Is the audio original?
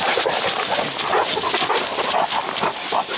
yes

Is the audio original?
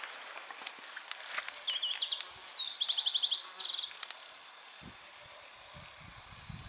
yes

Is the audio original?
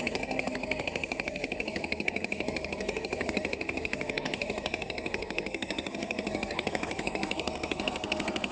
no